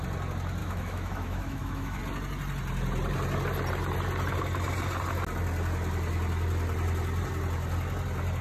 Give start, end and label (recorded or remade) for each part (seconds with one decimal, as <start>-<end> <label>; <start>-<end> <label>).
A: 0.0-0.6 recorded; 0.6-2.0 remade; 2.0-8.4 recorded